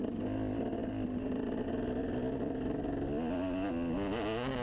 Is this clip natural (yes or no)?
yes